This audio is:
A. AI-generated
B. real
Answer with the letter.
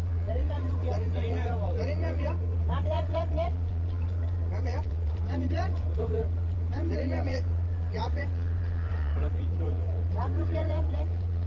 A